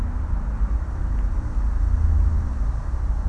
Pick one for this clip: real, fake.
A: real